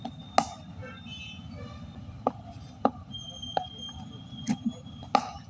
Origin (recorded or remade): recorded